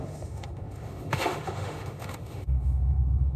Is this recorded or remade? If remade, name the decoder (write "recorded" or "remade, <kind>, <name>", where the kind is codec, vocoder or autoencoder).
remade, autoencoder, DAC-VAE